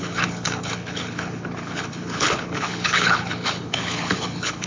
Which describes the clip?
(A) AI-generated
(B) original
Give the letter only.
A